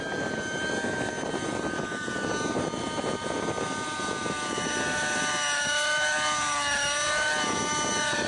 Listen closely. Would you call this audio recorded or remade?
recorded